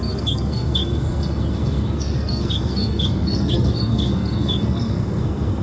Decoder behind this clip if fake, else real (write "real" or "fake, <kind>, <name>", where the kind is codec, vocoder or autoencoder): fake, codec, SNAC